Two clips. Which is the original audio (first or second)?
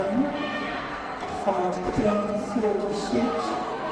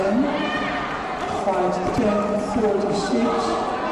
second